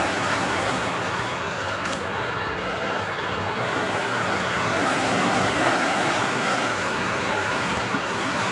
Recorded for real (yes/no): no